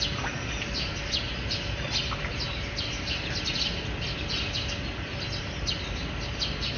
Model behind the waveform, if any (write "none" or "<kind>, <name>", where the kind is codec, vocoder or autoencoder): none